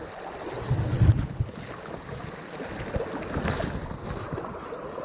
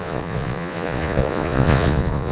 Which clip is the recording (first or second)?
first